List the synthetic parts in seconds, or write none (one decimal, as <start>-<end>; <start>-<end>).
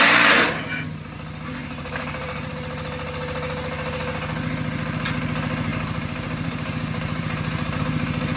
1.6-2.5; 5.7-7.8